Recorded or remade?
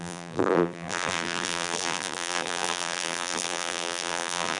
remade